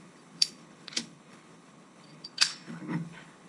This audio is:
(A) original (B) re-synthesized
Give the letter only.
B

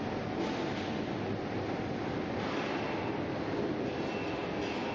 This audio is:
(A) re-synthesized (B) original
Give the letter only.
B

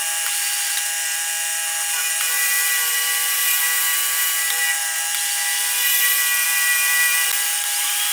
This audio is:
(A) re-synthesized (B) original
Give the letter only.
B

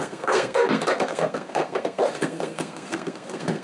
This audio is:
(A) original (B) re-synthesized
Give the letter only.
B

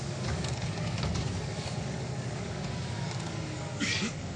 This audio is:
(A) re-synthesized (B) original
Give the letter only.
A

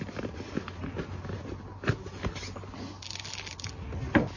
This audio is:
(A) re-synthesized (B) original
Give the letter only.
B